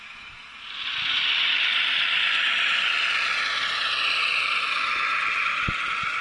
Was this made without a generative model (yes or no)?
yes